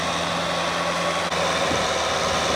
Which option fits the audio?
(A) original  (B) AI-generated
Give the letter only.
A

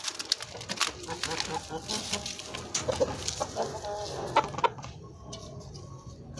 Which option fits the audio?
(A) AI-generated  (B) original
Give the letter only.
B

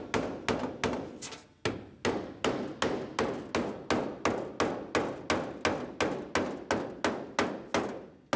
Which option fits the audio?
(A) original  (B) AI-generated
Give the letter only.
A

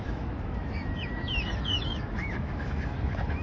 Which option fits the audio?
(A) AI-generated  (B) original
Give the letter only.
A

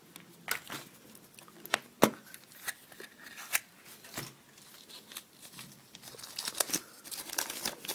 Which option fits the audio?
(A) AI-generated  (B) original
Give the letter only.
B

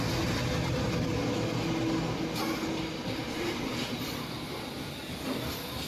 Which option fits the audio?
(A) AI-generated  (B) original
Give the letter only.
B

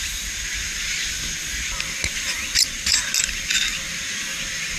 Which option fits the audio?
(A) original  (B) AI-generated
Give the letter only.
A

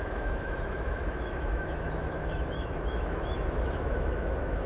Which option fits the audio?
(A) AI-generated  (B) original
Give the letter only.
A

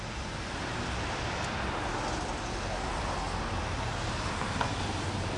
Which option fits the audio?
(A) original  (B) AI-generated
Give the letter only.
A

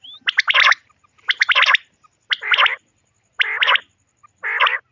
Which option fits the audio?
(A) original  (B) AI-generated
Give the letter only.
A